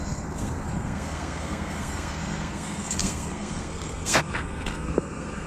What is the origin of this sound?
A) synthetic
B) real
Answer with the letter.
A